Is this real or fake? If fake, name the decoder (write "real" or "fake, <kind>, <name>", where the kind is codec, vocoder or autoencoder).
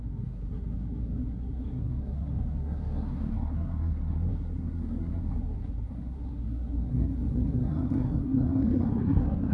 fake, codec, SNAC